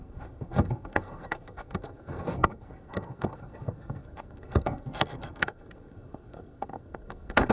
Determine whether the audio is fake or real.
fake